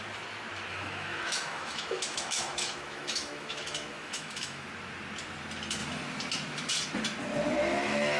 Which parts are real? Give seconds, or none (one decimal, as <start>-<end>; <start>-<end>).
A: 0.0-0.7; 4.7-8.2